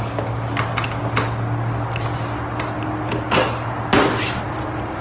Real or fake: real